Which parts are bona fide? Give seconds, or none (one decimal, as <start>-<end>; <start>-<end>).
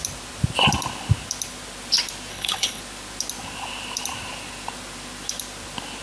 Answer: 0.0-2.3; 2.8-6.0